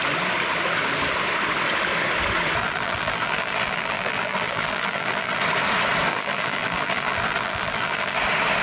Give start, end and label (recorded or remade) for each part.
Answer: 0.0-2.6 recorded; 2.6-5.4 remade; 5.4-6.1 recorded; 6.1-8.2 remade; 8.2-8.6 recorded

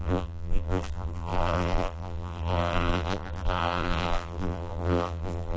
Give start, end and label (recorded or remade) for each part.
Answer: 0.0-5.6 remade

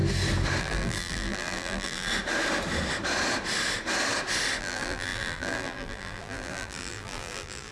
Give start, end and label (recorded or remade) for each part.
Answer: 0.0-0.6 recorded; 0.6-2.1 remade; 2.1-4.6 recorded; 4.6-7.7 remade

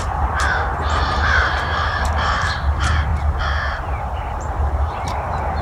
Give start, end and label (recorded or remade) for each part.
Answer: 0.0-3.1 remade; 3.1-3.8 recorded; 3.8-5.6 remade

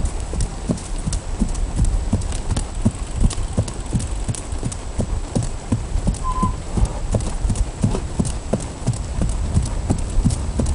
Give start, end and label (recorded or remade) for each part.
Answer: 0.0-0.5 recorded; 0.5-1.2 remade; 1.2-5.4 recorded; 5.4-6.1 remade; 6.1-6.9 recorded; 6.9-8.3 remade; 8.3-10.7 recorded